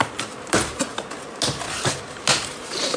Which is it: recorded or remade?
recorded